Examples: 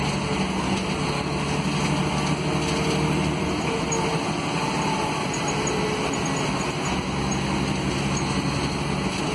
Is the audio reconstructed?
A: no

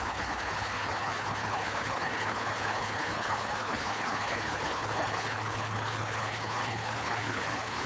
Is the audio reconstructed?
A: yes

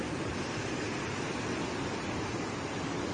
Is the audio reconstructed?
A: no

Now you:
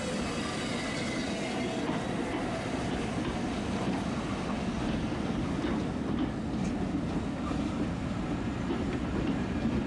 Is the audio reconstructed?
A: no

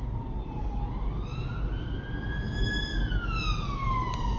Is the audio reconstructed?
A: no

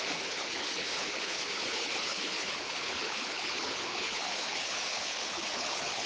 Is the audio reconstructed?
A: yes